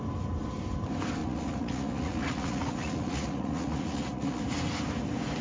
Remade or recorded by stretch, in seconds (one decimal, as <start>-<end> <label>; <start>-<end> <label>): 0.0-1.2 recorded; 1.2-4.4 remade; 4.4-5.4 recorded